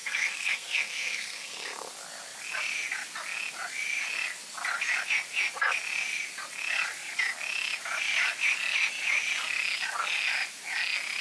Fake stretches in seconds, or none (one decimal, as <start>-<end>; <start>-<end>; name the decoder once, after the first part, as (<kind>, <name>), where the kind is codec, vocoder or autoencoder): 0.0-1.9 (codec, SNAC)